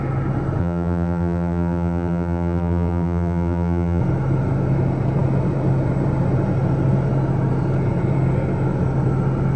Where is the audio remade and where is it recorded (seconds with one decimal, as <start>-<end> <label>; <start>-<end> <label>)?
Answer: 0.0-0.6 recorded; 0.6-4.0 remade; 4.0-9.6 recorded